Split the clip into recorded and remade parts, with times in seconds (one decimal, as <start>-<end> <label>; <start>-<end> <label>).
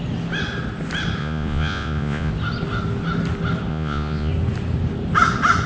0.0-1.2 recorded; 1.2-2.3 remade; 2.3-3.7 recorded; 3.7-4.3 remade; 4.3-5.7 recorded